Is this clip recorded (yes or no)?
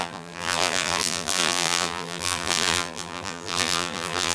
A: no